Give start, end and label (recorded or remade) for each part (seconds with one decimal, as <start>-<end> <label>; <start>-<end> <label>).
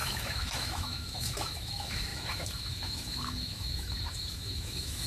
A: 0.0-5.1 remade